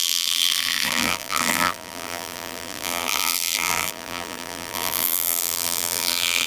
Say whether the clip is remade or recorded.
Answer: remade